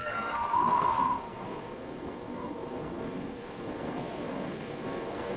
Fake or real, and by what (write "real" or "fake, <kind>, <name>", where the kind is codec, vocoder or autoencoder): fake, codec, SNAC